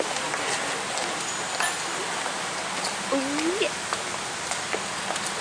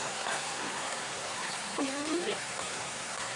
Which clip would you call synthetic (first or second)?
second